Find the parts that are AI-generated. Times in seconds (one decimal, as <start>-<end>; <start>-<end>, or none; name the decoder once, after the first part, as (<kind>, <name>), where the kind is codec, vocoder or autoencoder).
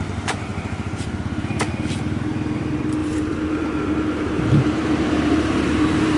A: 0.5-1.2 (vocoder, BigVGAN v2); 3.0-6.2